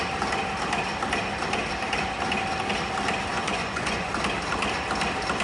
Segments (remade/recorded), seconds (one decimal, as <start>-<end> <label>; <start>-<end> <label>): 0.0-3.3 recorded; 3.3-4.1 remade; 4.1-5.4 recorded